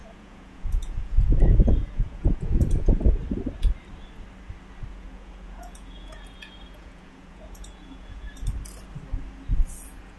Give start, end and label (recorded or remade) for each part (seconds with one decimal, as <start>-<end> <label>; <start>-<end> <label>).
0.0-3.2 remade; 3.2-4.9 recorded; 4.9-8.3 remade; 8.3-9.7 recorded; 9.7-10.2 remade